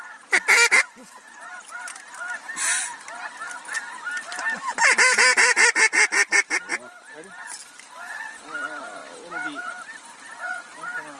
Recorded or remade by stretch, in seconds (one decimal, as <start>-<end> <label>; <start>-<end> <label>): 0.0-11.2 recorded